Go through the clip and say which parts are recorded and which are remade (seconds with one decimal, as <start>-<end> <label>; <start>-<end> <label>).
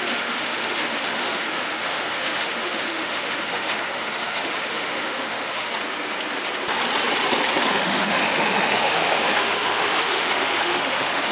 0.0-5.7 remade; 5.7-7.7 recorded; 7.7-11.3 remade